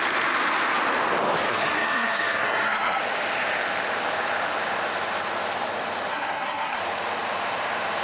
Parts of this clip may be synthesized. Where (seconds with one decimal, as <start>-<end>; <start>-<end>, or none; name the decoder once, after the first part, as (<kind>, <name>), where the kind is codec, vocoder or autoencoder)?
1.5-3.0 (codec, SNAC); 6.1-6.8